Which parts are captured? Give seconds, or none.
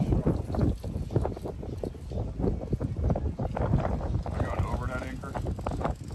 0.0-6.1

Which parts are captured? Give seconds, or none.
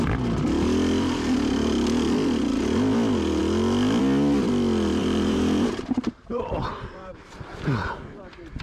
0.0-5.0; 8.2-8.6